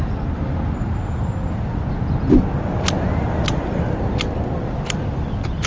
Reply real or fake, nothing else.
real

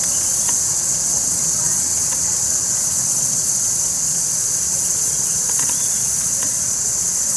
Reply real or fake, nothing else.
fake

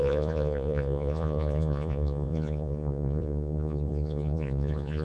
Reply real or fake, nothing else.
fake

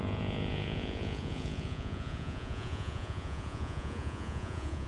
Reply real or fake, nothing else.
fake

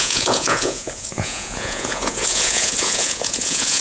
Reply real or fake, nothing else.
fake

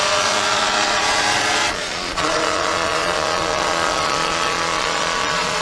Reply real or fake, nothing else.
fake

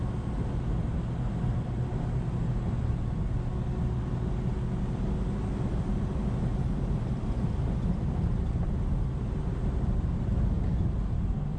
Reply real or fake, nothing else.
real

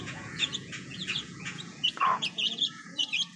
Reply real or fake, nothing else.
fake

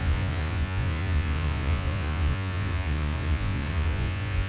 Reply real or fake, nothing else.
fake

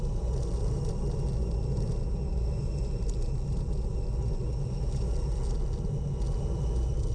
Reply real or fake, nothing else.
real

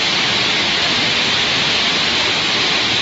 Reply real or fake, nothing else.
real